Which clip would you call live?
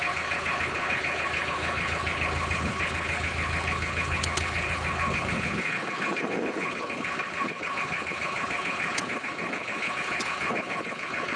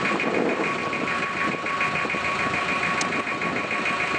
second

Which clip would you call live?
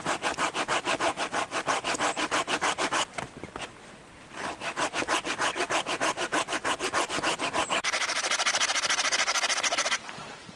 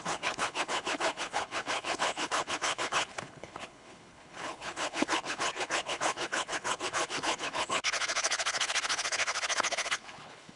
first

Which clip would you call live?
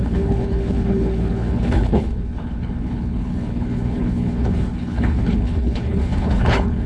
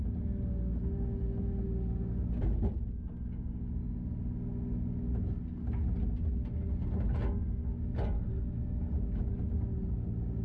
second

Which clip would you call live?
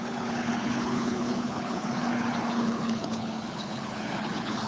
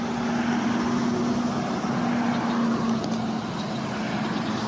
second